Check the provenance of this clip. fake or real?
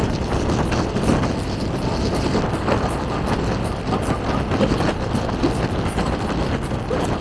real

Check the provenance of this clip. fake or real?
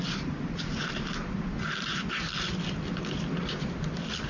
real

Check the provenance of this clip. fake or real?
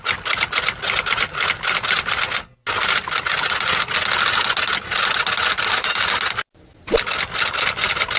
real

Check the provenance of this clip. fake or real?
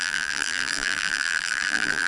fake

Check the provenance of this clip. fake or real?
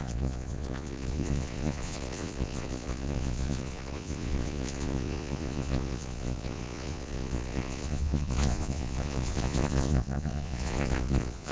fake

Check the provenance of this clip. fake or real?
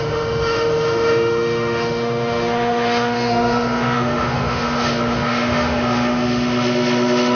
fake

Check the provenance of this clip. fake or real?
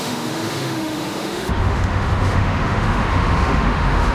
fake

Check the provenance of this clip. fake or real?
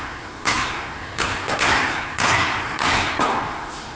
fake